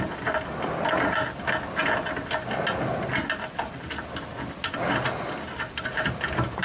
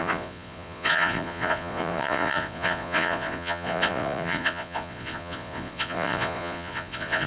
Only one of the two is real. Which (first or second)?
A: first